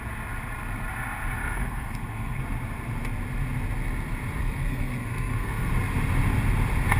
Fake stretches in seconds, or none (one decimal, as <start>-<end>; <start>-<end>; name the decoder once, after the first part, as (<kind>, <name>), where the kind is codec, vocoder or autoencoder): 1.4-2.4 (codec, SNAC); 4.4-5.7